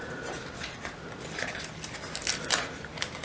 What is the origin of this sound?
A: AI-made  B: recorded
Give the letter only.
B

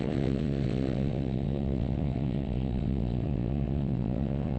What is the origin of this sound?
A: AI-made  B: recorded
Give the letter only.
A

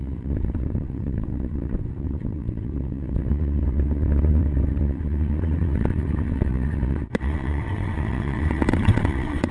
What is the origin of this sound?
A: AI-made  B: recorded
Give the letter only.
A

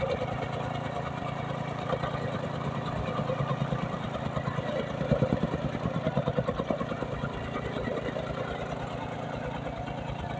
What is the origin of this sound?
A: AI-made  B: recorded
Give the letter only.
B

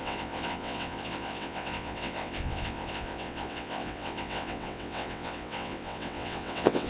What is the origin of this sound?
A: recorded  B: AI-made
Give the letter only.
B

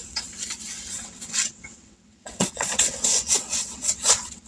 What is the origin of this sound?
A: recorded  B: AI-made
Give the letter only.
B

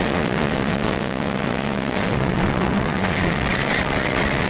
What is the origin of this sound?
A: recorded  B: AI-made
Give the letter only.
B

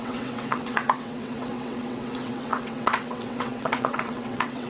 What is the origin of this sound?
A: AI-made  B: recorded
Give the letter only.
A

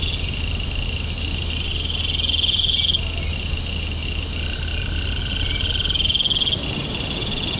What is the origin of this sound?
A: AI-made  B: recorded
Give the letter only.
B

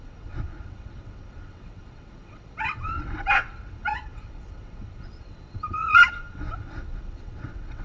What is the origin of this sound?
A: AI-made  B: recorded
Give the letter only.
A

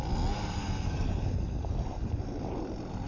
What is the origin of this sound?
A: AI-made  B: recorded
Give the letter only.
B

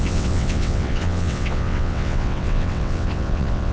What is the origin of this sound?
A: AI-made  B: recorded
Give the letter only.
A